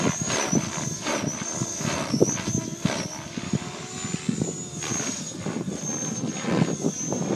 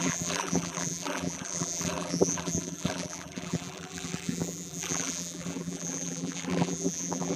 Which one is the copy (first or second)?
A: second